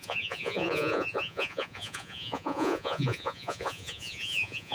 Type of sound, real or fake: fake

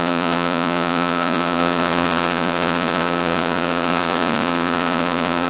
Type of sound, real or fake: fake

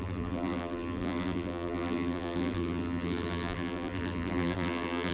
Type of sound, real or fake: fake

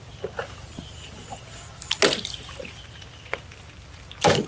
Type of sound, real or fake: real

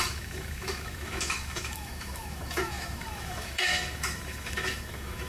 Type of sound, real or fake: fake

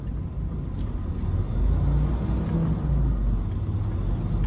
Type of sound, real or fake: real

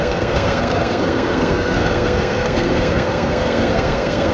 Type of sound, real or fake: fake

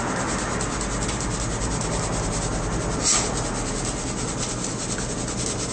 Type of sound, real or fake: real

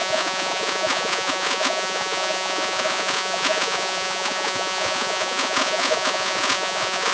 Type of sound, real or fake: fake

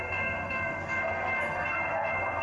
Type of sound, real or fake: fake